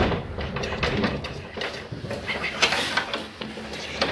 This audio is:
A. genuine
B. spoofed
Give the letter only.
A